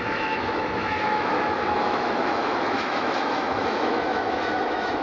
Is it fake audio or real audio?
fake